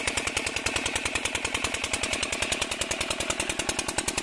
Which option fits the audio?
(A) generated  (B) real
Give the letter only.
B